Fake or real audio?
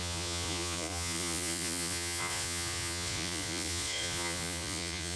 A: fake